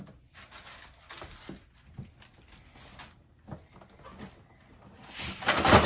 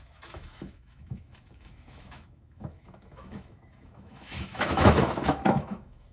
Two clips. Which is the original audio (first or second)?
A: first